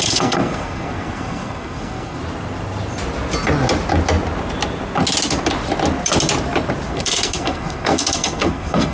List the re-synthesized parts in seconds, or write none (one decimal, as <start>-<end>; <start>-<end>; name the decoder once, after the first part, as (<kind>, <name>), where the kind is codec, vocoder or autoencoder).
0.0-2.2 (codec, SNAC); 6.9-8.9